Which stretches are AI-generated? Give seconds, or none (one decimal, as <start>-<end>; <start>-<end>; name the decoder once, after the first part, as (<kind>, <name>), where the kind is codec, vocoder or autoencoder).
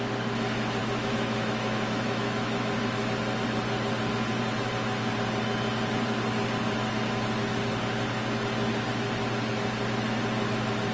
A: 0.8-2.7 (autoencoder, DAC-VAE)